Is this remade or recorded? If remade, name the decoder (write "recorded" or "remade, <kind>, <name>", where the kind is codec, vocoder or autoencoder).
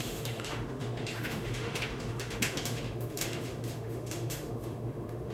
remade, autoencoder, DAC-VAE